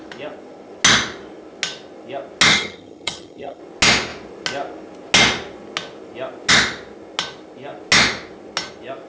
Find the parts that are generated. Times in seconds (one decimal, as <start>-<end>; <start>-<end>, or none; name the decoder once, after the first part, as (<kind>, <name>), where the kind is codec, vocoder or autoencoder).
2.5-3.6 (vocoder, HiFi-GAN)